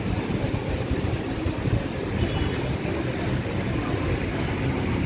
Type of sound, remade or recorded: recorded